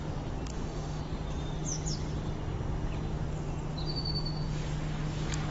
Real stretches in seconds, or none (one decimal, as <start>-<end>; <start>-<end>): 0.0-0.5; 1.0-5.5

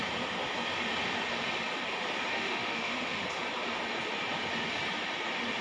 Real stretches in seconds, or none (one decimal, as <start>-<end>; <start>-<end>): 0.0-2.3; 3.2-5.6

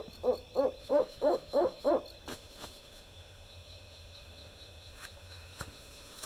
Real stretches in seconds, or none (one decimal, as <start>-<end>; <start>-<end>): 0.0-0.8; 1.9-2.3

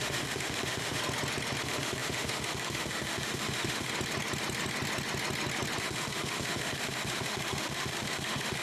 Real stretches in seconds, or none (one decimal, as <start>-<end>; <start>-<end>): 1.0-1.6; 3.9-5.8